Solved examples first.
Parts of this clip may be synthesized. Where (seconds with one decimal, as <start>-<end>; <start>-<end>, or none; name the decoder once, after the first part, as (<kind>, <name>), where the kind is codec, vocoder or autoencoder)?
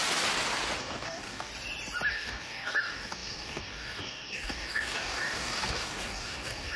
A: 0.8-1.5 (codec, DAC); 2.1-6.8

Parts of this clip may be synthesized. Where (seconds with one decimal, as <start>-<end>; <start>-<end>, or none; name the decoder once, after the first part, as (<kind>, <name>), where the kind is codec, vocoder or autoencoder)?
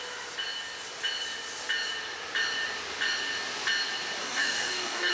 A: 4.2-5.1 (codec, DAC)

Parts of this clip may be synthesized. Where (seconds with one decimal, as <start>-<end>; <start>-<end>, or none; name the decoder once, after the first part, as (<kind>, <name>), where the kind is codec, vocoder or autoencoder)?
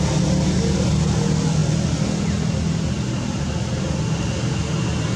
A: none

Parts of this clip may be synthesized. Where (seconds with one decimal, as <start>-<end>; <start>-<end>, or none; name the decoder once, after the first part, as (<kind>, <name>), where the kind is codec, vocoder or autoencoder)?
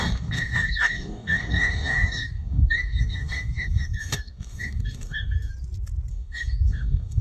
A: 0.0-5.5 (codec, DAC); 6.1-7.2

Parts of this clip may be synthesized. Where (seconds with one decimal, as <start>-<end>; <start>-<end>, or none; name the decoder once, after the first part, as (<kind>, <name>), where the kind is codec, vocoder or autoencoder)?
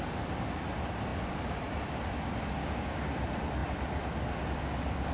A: 2.6-3.2 (codec, DAC)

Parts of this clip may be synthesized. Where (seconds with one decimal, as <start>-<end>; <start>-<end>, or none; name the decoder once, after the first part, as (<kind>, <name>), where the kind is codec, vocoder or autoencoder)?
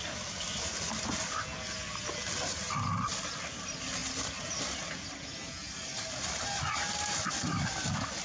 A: none